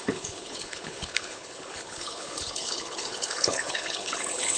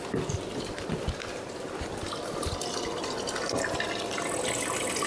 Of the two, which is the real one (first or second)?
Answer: second